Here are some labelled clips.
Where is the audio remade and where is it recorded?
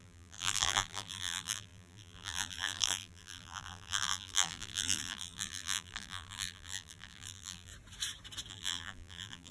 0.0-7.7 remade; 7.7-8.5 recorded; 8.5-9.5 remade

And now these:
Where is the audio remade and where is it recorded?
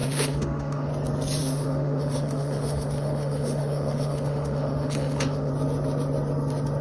0.0-0.9 remade; 0.9-1.4 recorded; 1.4-5.5 remade; 5.5-6.8 recorded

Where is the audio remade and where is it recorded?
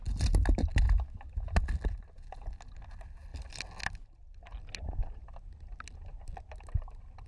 0.0-7.3 recorded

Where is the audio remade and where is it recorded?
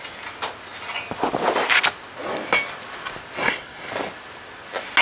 0.0-3.4 recorded; 3.4-3.9 remade; 3.9-5.0 recorded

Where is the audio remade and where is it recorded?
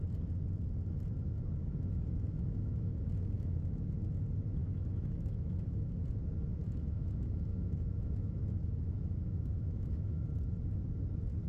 0.0-1.6 recorded; 1.6-3.9 remade; 3.9-4.6 recorded; 4.6-6.0 remade; 6.0-6.6 recorded; 6.6-10.3 remade; 10.3-11.5 recorded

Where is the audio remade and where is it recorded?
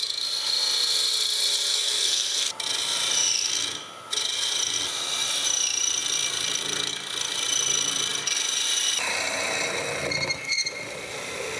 0.0-1.7 recorded; 1.7-2.5 remade; 2.5-11.6 recorded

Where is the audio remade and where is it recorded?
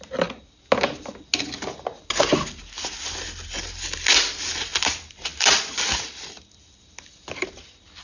0.0-8.0 recorded